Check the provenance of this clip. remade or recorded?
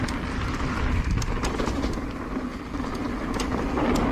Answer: recorded